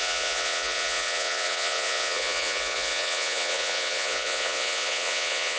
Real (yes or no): no